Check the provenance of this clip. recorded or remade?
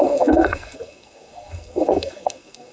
remade